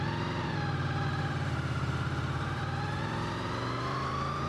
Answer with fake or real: fake